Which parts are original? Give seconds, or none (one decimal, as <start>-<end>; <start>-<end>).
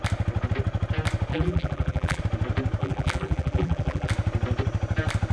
0.0-1.3; 2.2-2.8; 4.1-5.3